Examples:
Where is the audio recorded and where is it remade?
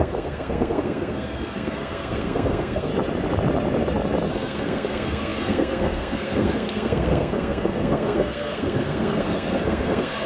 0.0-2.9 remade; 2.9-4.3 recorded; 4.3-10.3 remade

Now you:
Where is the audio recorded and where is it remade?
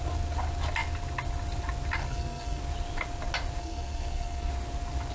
0.0-2.0 recorded; 2.0-2.6 remade; 2.6-3.6 recorded; 3.6-4.5 remade; 4.5-5.1 recorded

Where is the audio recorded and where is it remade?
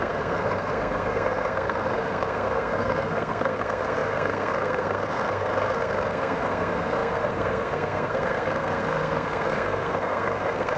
0.0-10.8 remade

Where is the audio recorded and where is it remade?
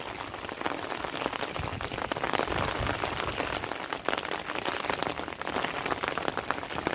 0.0-6.9 recorded